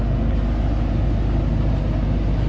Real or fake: real